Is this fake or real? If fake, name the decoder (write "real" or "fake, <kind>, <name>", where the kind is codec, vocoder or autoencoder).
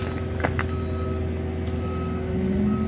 real